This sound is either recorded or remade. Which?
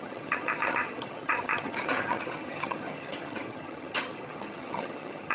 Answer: remade